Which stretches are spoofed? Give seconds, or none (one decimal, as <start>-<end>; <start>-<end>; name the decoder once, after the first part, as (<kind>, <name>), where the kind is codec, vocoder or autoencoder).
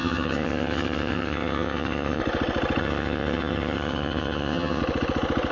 0.0-2.2 (vocoder, HiFi-GAN); 2.8-4.8